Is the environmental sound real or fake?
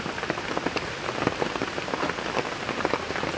real